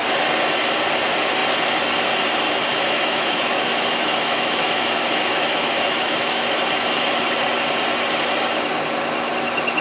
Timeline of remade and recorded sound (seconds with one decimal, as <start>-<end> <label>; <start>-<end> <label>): 0.0-2.7 recorded; 2.7-6.6 remade; 6.6-9.8 recorded